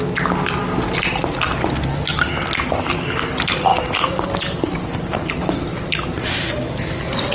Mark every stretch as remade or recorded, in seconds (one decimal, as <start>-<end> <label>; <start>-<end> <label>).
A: 0.0-7.3 recorded